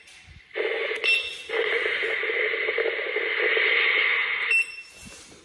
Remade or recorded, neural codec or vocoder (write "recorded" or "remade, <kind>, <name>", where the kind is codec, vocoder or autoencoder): recorded